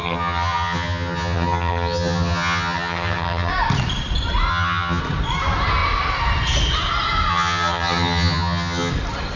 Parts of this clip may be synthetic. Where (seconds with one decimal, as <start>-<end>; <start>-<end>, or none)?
0.0-3.5; 4.5-5.0; 7.3-8.9